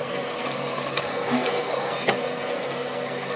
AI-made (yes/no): yes